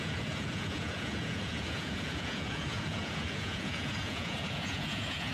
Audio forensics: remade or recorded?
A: remade